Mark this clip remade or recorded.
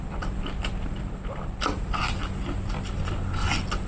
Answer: recorded